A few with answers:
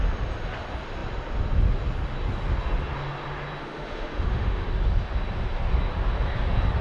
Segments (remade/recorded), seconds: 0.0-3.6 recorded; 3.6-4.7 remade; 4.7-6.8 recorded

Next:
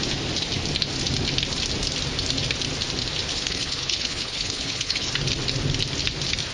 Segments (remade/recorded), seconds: 0.0-3.3 recorded; 3.3-5.1 remade; 5.1-6.5 recorded

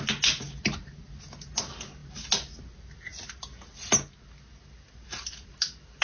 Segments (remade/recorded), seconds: 0.0-6.0 recorded